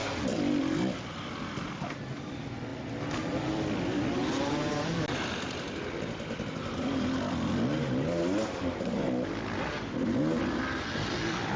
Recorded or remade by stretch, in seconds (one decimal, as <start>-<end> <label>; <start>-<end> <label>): 0.0-11.6 recorded